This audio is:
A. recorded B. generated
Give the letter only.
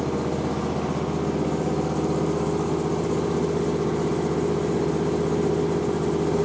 A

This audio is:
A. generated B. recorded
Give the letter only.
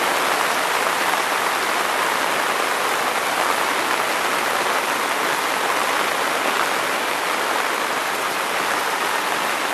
B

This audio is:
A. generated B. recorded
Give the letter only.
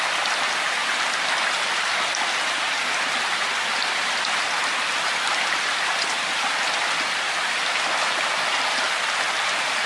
B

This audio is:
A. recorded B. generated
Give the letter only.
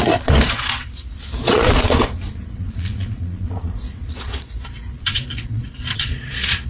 B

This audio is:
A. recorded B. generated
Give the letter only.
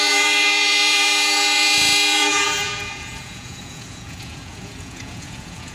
B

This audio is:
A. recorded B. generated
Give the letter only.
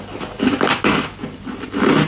A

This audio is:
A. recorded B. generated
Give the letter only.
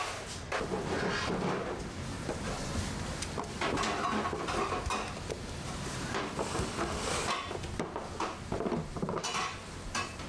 A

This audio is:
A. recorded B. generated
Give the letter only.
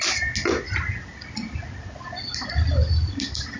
A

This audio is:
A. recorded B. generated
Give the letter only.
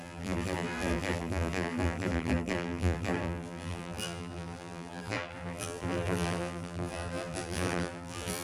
B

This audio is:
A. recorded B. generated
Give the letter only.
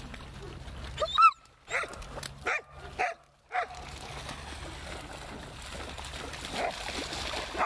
A